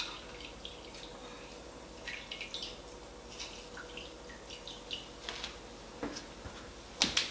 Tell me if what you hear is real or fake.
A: real